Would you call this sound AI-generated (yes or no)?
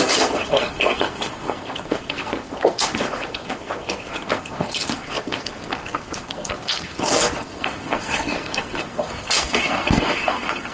yes